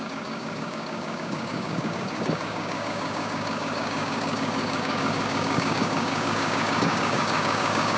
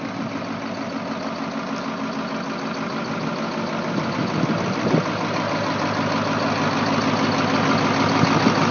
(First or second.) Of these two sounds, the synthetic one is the first